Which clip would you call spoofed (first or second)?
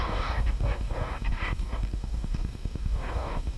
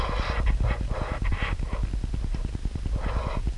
first